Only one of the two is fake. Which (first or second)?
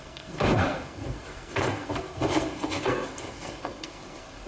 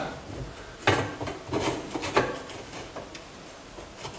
first